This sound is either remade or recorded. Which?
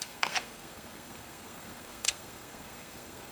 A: remade